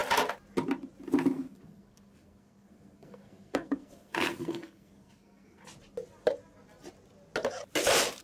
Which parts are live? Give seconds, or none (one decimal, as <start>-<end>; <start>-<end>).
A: 0.0-1.3; 5.6-8.2